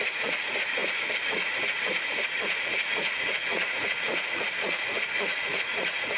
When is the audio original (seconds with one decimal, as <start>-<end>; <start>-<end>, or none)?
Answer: none